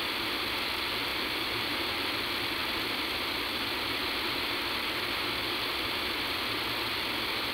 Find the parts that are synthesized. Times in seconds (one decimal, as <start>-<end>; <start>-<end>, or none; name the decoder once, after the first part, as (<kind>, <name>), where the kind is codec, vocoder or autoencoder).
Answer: 1.1-1.9 (vocoder, BigVGAN v2)

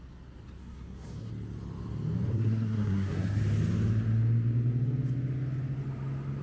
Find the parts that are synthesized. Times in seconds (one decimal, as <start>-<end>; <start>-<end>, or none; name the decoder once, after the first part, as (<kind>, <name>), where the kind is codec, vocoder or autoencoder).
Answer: 0.6-1.3 (codec, SNAC); 2.3-3.4

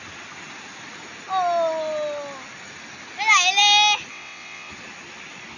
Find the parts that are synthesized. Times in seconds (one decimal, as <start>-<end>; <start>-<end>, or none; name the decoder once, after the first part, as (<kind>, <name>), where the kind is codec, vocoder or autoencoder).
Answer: 4.1-4.7 (vocoder, WaveNeXt)

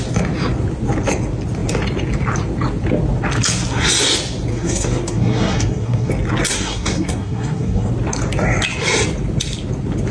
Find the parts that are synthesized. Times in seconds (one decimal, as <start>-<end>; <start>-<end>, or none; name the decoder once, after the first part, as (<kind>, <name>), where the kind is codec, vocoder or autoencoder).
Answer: 4.5-6.1 (codec, SNAC); 6.5-7.9

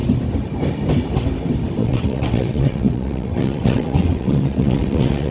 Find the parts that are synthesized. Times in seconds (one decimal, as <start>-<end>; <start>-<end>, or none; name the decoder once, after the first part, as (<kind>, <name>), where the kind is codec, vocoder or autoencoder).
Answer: 1.8-5.3 (vocoder, WaveNeXt)

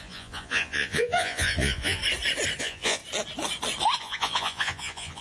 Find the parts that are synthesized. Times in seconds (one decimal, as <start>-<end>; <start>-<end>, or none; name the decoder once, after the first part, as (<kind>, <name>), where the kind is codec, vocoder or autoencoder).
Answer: 0.0-2.0 (vocoder, Vocos); 2.6-3.0; 4.0-5.2